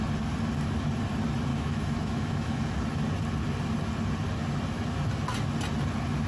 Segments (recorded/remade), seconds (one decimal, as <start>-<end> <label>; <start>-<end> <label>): 0.0-1.5 recorded; 1.5-2.6 remade; 2.6-6.3 recorded